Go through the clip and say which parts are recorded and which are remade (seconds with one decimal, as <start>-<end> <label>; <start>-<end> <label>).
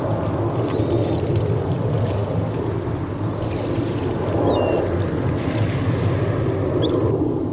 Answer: 0.0-7.5 recorded